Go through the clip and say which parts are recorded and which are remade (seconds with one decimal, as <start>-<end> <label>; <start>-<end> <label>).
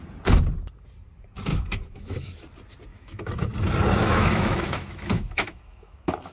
0.0-1.5 recorded; 1.5-2.4 remade; 2.4-2.9 recorded; 2.9-3.5 remade; 3.5-4.0 recorded; 4.0-6.3 remade